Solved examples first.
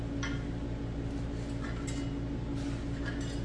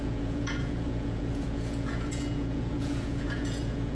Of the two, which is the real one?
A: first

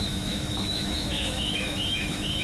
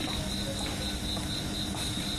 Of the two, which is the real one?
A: second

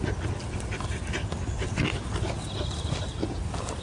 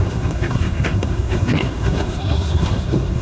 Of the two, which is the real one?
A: first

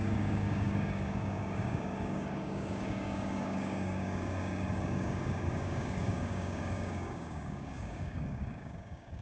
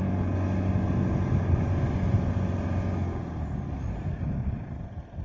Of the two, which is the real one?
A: second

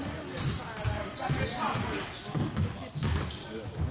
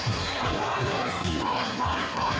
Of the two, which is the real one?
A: first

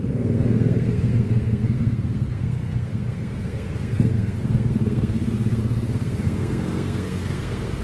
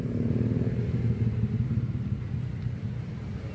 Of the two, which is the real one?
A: second